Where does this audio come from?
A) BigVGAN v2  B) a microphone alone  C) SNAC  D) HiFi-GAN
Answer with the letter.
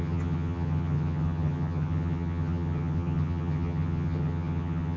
D